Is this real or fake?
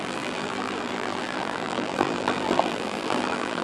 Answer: fake